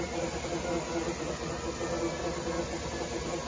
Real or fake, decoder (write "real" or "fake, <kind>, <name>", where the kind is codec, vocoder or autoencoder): real